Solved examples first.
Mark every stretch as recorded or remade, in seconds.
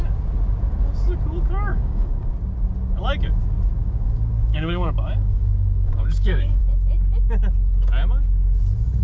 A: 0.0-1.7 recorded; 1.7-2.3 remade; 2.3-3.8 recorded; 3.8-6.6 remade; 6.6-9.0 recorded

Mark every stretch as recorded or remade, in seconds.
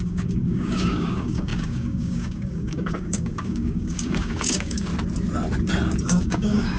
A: 0.0-4.9 remade; 4.9-6.0 recorded; 6.0-6.8 remade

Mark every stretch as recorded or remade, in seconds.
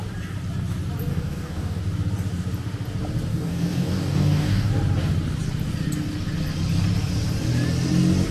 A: 0.0-1.1 recorded; 1.1-1.8 remade; 1.8-3.3 recorded; 3.3-4.7 remade; 4.7-8.3 recorded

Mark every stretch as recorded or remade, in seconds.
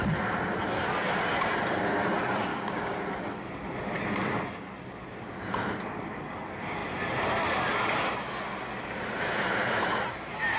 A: 0.0-2.5 recorded; 2.5-3.0 remade; 3.0-10.6 recorded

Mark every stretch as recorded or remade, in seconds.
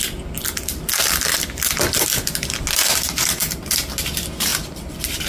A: 0.0-5.3 recorded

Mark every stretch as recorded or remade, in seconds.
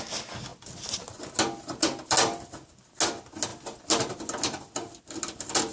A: 0.0-5.7 recorded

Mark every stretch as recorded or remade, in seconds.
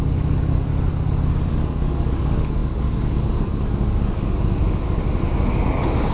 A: 0.0-0.7 remade; 0.7-1.5 recorded; 1.5-5.0 remade; 5.0-6.1 recorded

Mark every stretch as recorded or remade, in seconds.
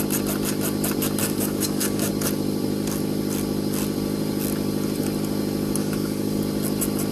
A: 0.0-1.2 recorded; 1.2-2.1 remade; 2.1-5.8 recorded; 5.8-6.4 remade; 6.4-7.1 recorded